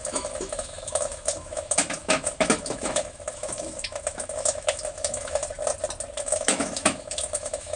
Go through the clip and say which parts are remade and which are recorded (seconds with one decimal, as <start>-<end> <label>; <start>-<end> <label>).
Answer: 0.0-5.4 remade; 5.4-6.2 recorded; 6.2-7.8 remade